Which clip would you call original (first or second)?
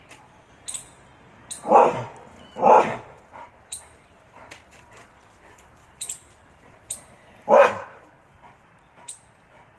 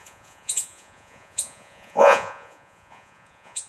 first